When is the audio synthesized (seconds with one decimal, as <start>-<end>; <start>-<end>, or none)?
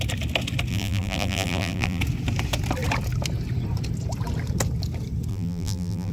0.7-2.0; 5.3-6.1